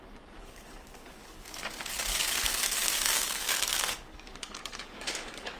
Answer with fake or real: fake